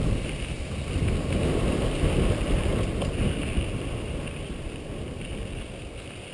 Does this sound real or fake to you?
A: real